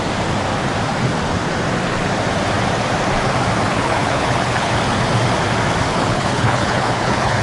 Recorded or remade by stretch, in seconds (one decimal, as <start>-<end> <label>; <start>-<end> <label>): 0.0-3.7 recorded; 3.7-4.7 remade; 4.7-5.9 recorded; 5.9-7.4 remade